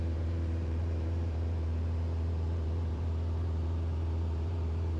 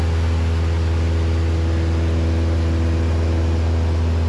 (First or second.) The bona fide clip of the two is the second